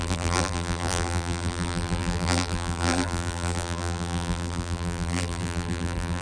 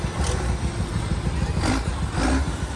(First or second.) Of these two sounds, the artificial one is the first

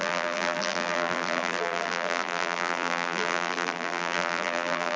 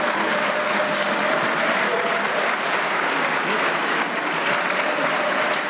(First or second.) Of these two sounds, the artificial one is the first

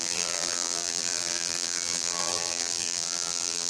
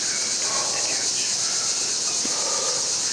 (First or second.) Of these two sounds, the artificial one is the first